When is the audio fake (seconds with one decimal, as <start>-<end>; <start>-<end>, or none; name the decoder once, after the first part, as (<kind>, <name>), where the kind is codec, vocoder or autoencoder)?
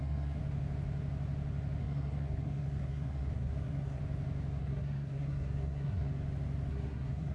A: 0.0-0.4 (codec, SNAC); 1.8-4.0; 4.6-6.1; 6.7-7.3